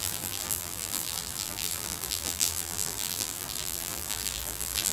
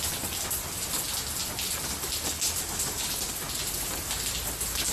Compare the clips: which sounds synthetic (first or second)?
first